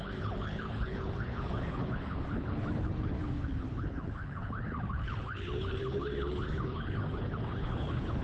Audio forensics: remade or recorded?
remade